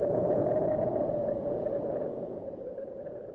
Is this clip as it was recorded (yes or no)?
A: no